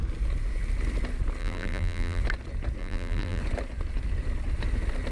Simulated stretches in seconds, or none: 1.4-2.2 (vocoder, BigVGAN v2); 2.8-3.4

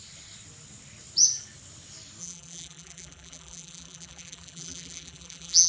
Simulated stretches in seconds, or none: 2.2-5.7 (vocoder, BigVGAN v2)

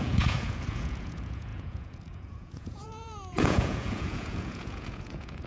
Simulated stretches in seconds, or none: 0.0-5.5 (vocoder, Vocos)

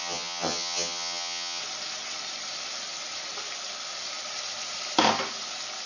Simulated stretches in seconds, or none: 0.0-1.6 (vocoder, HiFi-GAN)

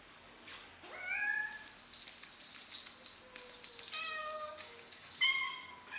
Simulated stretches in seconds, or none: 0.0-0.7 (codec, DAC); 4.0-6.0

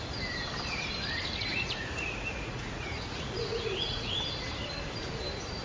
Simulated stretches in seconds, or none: 1.5-4.1 (vocoder, Vocos)

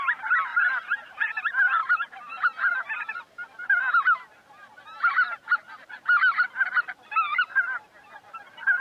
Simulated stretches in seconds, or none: 0.5-1.3 (vocoder, BigVGAN v2); 1.8-2.8; 7.3-8.1